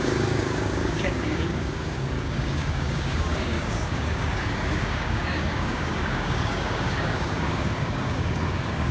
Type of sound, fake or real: fake